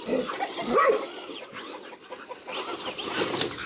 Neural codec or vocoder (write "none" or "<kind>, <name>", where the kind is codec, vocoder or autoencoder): none